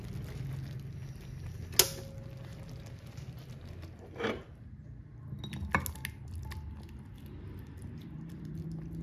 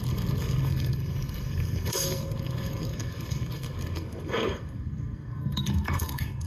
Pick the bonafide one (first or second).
first